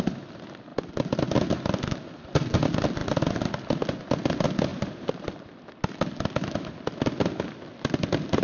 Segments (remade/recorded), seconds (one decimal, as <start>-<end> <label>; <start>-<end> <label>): 0.0-4.7 recorded; 4.7-5.4 remade; 5.4-8.4 recorded